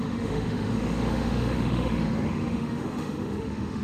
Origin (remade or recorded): remade